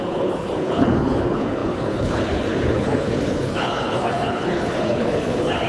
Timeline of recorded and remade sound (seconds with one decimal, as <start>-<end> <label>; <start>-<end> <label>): 0.0-5.7 remade